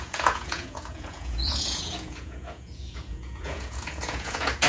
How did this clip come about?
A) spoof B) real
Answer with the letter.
A